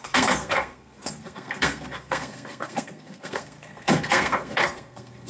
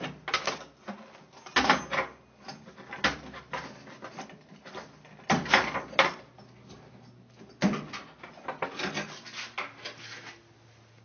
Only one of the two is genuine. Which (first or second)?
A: second